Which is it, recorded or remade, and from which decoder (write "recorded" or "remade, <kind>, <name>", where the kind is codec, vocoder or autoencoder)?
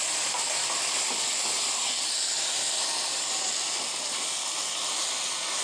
recorded